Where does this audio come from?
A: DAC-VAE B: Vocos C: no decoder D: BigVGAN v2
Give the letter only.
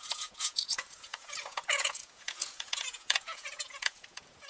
B